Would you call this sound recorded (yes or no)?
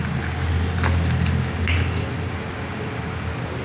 yes